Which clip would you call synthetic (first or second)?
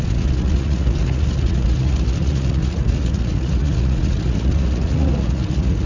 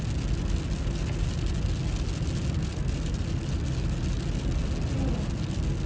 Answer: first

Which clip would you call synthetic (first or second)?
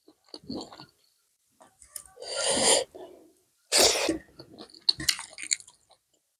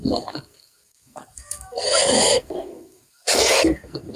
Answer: second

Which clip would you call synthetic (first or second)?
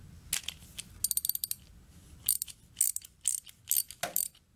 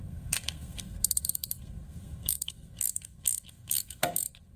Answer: second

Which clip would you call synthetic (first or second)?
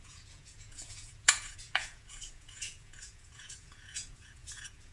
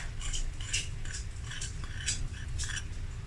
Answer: first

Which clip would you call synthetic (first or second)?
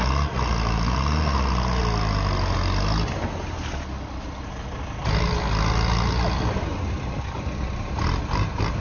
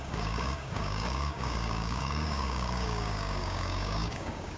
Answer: second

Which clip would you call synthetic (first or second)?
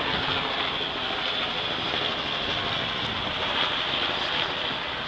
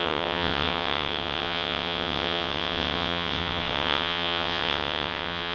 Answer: second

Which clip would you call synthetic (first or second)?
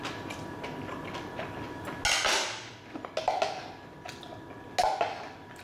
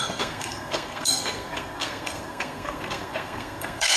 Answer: second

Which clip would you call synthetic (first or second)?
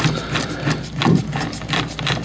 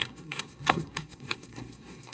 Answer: second